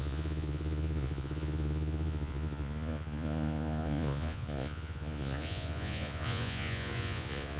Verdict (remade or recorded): remade